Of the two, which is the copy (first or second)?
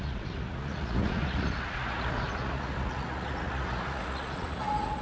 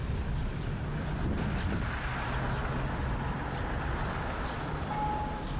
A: first